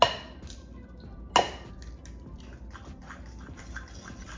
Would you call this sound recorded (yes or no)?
yes